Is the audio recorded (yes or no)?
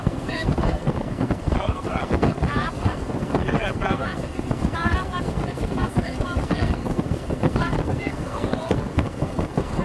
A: no